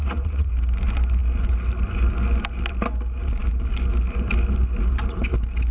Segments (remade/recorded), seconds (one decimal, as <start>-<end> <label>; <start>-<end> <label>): 0.0-0.5 remade; 0.5-5.7 recorded